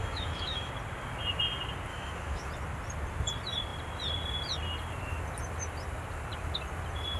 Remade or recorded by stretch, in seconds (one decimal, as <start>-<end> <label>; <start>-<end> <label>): 0.0-0.7 remade; 0.7-1.9 recorded; 1.9-2.5 remade; 2.5-7.2 recorded